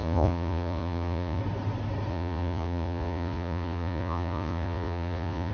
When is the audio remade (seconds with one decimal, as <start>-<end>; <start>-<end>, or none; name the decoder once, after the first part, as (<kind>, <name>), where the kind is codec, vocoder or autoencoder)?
0.0-1.4 (vocoder, Vocos); 2.1-5.5